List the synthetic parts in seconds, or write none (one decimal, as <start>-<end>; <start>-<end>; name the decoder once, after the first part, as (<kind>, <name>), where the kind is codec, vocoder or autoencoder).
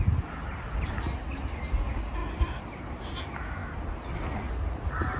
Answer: none